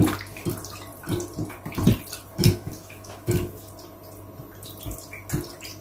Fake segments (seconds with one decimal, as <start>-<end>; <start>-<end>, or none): 2.3-3.7